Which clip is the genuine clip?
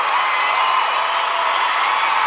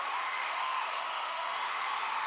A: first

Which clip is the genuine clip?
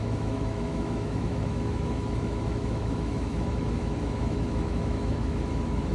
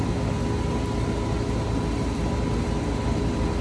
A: second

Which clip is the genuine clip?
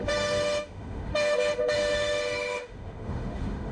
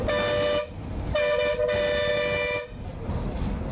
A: second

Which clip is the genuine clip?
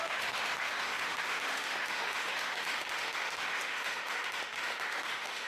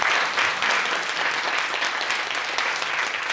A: second